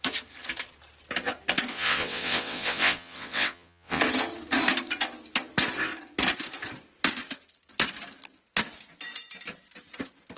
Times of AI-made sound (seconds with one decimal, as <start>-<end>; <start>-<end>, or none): 1.7-4.0